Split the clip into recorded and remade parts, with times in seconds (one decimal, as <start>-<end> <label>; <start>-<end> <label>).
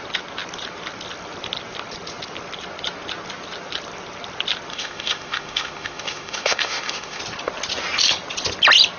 0.0-4.7 recorded; 4.7-7.2 remade; 7.2-9.0 recorded